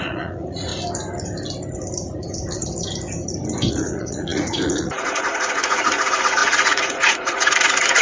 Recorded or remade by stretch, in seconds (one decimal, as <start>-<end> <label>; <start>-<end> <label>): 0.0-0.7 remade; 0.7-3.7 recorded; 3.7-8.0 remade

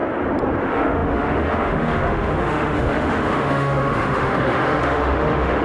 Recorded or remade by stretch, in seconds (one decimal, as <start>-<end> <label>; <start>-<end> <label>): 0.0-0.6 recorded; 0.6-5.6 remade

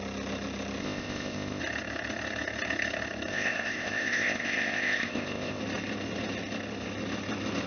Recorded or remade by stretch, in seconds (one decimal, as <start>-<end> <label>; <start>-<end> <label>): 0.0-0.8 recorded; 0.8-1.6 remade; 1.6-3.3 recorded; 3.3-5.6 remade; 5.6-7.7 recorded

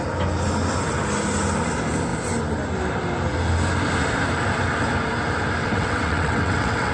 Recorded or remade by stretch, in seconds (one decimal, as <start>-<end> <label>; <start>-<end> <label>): 0.0-5.6 recorded; 5.6-6.9 remade

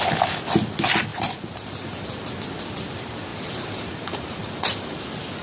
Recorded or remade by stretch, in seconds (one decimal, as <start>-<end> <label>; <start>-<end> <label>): 0.0-1.1 recorded; 1.1-2.3 remade; 2.3-3.3 recorded; 3.3-5.0 remade; 5.0-5.4 recorded